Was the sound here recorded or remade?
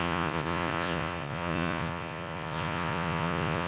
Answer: remade